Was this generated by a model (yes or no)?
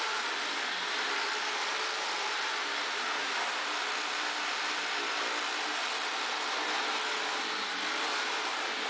no